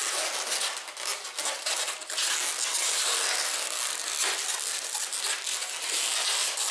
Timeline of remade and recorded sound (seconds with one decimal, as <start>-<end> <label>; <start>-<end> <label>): 0.0-6.7 recorded